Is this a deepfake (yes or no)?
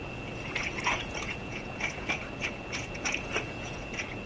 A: yes